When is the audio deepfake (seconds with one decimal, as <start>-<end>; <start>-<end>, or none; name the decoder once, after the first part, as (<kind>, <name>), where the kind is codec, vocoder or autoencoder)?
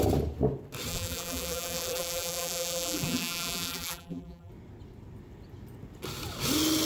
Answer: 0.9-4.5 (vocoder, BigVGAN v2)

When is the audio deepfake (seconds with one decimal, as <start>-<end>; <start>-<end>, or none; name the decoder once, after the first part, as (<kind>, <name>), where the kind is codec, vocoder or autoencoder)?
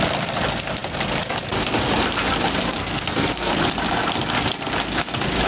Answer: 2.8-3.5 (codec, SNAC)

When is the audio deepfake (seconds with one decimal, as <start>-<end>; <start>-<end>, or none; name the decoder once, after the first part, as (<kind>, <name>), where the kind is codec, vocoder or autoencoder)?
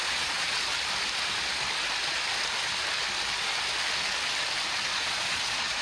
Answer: 0.0-0.5 (vocoder, Vocos); 4.9-5.8